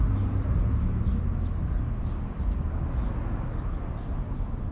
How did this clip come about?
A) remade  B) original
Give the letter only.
B